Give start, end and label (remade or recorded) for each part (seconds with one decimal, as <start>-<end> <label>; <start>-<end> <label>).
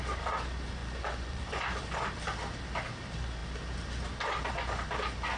0.0-0.8 recorded; 0.8-1.8 remade; 1.8-5.4 recorded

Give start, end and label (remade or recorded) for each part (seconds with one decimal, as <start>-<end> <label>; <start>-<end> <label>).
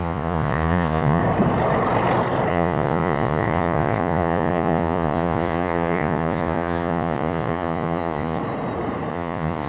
0.0-1.2 remade; 1.2-2.5 recorded; 2.5-8.4 remade; 8.4-9.1 recorded; 9.1-9.7 remade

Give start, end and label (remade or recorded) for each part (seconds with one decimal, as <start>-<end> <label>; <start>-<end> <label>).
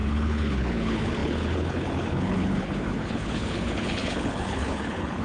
0.0-5.2 remade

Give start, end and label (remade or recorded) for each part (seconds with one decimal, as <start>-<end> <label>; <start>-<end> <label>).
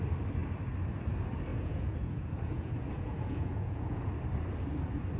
0.0-1.5 recorded; 1.5-4.0 remade; 4.0-5.2 recorded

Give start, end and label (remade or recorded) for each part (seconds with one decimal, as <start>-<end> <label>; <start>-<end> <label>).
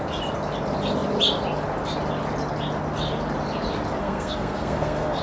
0.0-4.0 recorded; 4.0-5.2 remade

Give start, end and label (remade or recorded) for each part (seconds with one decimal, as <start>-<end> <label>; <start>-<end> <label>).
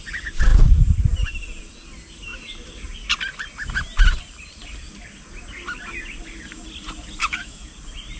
0.0-7.2 recorded; 7.2-7.7 remade; 7.7-8.2 recorded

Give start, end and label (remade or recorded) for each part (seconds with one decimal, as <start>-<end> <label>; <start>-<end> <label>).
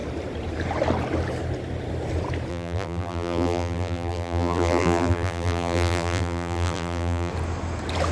0.0-2.5 recorded; 2.5-7.3 remade; 7.3-8.1 recorded